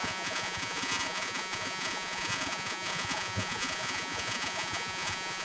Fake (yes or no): yes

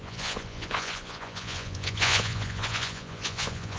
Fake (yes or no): yes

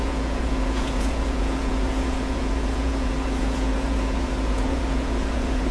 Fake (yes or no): yes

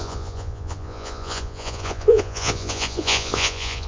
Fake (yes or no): yes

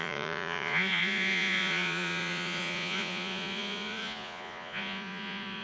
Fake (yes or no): yes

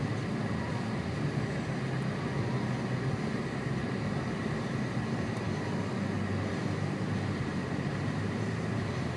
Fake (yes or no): no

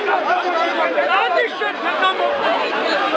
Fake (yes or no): no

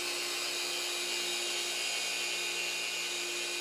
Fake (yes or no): no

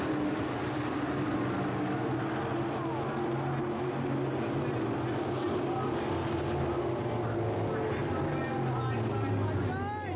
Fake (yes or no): no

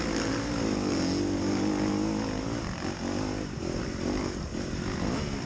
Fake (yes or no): no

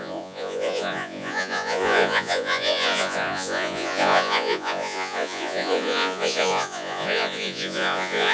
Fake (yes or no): yes